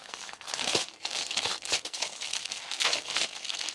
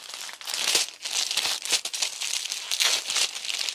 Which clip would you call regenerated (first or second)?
first